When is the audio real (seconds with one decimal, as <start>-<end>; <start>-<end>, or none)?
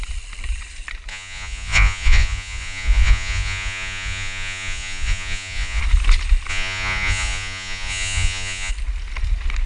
0.0-1.1; 5.8-6.5; 8.7-9.7